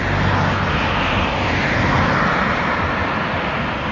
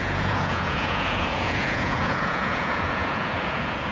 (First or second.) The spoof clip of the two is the second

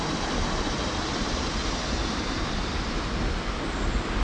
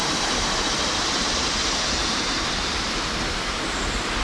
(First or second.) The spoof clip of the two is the second